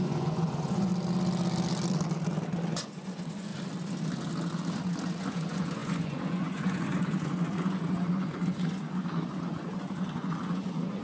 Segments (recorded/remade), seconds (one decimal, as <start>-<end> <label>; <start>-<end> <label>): 0.0-0.9 remade; 0.9-2.7 recorded; 2.7-3.5 remade; 3.5-5.2 recorded; 5.2-11.0 remade